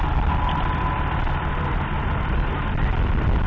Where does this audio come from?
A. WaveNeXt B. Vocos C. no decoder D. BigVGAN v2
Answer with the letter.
C